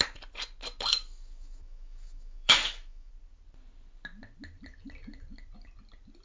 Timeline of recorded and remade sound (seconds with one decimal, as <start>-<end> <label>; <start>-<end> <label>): 0.0-0.9 recorded; 0.9-3.1 remade; 3.1-6.2 recorded